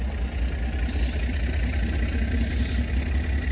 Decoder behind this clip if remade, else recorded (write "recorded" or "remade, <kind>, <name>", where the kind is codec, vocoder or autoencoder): recorded